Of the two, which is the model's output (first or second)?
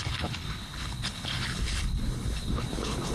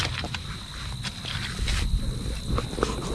first